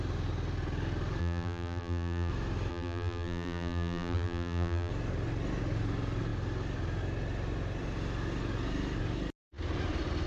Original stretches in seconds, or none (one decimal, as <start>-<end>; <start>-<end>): 0.0-1.2; 2.3-2.7; 4.9-10.3